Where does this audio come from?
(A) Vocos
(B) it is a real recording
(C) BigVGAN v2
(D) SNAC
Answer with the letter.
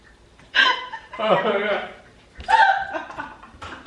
C